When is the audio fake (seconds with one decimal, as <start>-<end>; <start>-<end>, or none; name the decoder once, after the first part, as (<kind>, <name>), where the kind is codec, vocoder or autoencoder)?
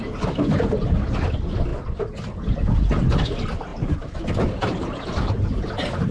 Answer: none